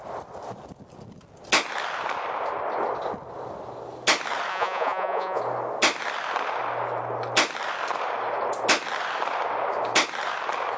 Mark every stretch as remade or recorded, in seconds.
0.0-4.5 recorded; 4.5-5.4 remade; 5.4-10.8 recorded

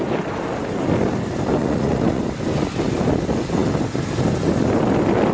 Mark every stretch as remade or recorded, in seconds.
0.0-1.6 recorded; 1.6-2.2 remade; 2.2-5.3 recorded